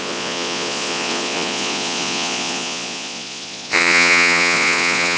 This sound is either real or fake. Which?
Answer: fake